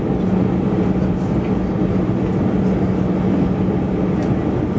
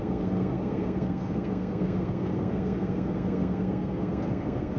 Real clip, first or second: first